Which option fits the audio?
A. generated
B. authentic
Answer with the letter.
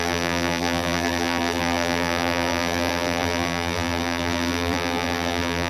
A